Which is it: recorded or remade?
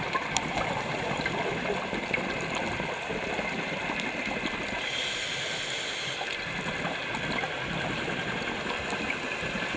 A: recorded